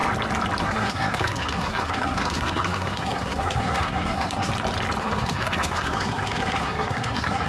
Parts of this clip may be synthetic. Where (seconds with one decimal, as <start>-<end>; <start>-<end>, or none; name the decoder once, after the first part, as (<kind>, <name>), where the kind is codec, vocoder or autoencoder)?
0.6-4.5 (codec, SNAC); 5.0-7.5